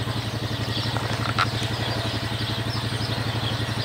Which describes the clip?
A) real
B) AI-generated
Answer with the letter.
A